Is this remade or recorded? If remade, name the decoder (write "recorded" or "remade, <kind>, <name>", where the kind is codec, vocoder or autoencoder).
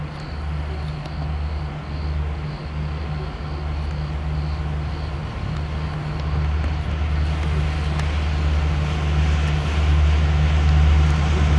recorded